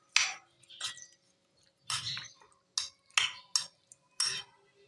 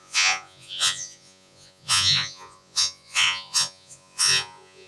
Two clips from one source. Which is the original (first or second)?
first